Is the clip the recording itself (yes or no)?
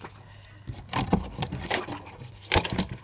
no